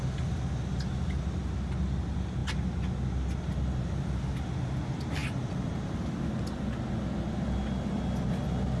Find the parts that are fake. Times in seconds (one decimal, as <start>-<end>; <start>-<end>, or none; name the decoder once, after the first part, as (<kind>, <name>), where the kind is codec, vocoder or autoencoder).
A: none